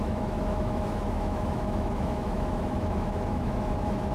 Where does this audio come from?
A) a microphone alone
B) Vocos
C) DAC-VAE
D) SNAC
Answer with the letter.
C